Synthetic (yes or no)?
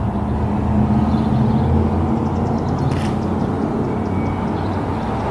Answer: no